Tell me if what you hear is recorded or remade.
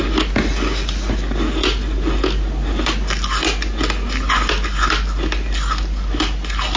recorded